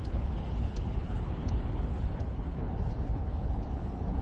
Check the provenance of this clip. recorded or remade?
remade